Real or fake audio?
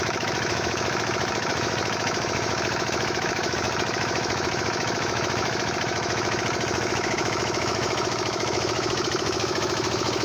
fake